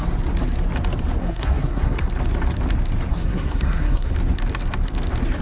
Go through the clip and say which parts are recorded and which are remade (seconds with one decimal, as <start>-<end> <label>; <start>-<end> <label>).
0.0-1.2 recorded; 1.2-2.1 remade; 2.1-3.1 recorded; 3.1-4.1 remade; 4.1-5.4 recorded